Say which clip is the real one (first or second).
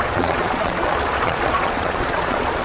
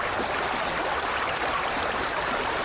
second